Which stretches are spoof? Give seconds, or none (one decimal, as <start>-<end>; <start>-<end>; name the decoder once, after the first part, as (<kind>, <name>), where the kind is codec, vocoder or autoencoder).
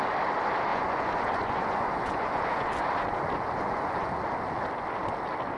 0.7-4.1 (vocoder, Vocos)